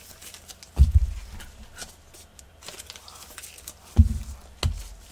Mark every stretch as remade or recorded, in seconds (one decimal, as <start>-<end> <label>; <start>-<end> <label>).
0.0-5.1 recorded